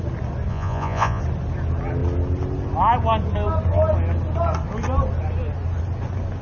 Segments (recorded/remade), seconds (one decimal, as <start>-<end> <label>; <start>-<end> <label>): 0.0-0.5 recorded; 0.5-1.2 remade; 1.2-6.4 recorded

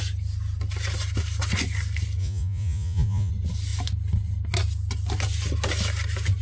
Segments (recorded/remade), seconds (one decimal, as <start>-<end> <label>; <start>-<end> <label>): 0.0-2.2 recorded; 2.2-3.3 remade; 3.3-6.4 recorded

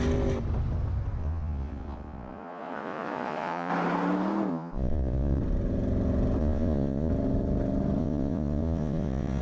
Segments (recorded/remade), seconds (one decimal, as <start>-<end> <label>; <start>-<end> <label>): 0.0-1.2 recorded; 1.2-3.7 remade; 3.7-4.5 recorded; 4.5-5.4 remade; 5.4-6.4 recorded; 6.4-7.1 remade; 7.1-8.0 recorded; 8.0-9.4 remade

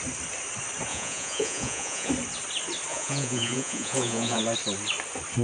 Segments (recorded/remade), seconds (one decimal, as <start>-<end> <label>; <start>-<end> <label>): 0.0-0.9 recorded; 0.9-2.1 remade; 2.1-2.9 recorded; 2.9-4.4 remade; 4.4-5.4 recorded

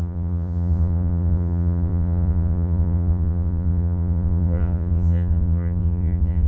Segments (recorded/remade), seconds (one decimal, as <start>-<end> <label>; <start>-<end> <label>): 0.0-6.5 remade